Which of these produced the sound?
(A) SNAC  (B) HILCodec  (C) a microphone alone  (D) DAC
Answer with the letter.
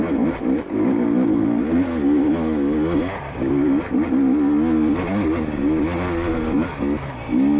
C